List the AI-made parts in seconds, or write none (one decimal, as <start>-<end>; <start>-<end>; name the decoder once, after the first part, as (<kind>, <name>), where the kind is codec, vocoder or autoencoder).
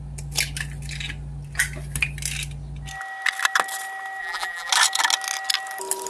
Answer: 4.2-4.7 (vocoder, BigVGAN v2)